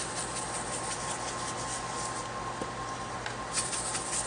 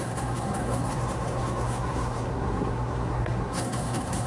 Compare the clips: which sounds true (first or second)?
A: first